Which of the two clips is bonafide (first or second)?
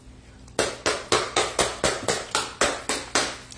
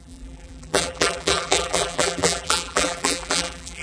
first